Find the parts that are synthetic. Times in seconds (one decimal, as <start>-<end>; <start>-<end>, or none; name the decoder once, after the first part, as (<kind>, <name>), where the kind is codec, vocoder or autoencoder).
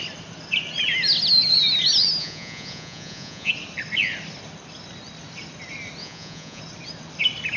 2.2-3.5 (vocoder, Vocos); 6.0-6.6